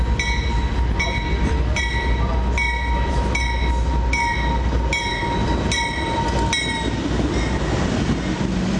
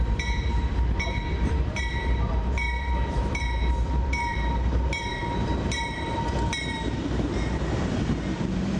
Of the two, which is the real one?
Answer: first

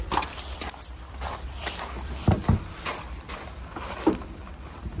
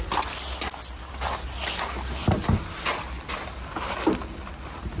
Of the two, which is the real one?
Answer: second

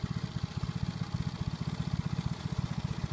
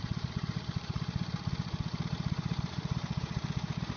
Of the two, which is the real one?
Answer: first